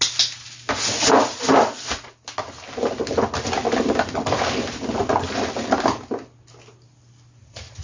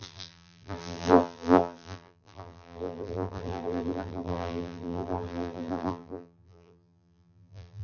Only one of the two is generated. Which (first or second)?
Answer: second